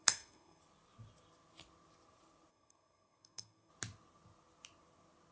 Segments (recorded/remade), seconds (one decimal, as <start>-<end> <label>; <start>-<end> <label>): 0.0-0.6 remade; 0.6-2.5 recorded; 2.5-3.7 remade; 3.7-5.3 recorded